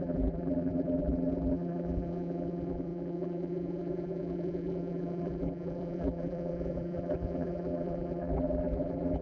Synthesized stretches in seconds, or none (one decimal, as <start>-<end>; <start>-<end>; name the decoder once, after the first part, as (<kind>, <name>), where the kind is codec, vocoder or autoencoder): 0.0-9.2 (vocoder, BigVGAN v2)